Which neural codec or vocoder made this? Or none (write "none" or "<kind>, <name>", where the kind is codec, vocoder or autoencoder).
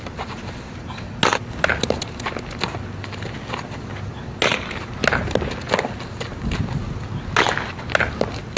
none